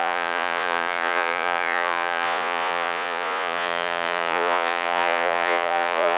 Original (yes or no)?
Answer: no